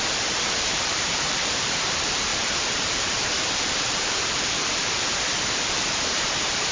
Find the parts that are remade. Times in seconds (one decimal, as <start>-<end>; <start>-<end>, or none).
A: 0.0-6.7